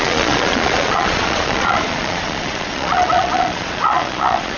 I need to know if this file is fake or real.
fake